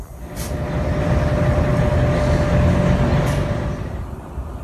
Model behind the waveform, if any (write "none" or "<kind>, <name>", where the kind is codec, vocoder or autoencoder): none